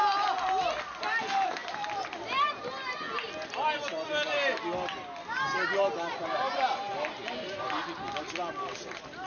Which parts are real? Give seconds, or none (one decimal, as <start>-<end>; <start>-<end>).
0.0-1.6; 2.3-6.9; 7.6-9.3

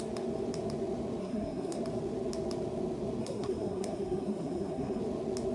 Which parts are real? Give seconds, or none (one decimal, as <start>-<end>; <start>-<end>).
0.0-1.2; 1.8-3.2; 5.0-5.5

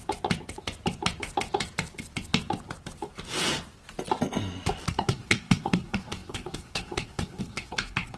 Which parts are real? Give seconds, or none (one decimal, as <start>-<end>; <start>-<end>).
0.0-4.9

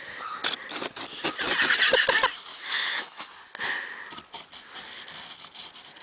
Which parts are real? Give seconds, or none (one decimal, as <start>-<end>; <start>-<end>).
0.0-2.5; 3.3-6.0

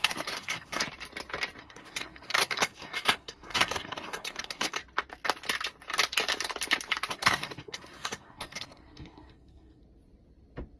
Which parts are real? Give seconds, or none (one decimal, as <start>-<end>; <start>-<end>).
0.8-1.6; 4.8-7.1; 9.8-10.8

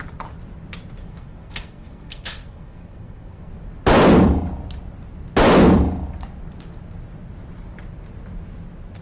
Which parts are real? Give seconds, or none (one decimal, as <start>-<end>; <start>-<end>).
0.0-1.0; 3.5-9.0

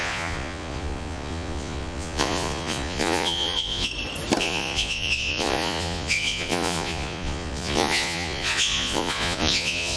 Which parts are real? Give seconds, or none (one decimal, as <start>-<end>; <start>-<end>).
3.9-4.4

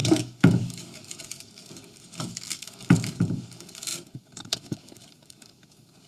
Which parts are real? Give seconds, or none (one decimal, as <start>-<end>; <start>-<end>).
none